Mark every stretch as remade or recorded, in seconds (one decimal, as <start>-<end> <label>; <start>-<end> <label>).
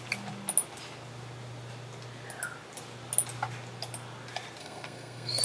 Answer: 0.0-4.6 recorded; 4.6-5.4 remade